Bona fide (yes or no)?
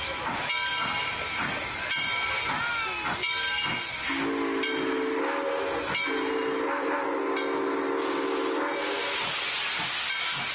yes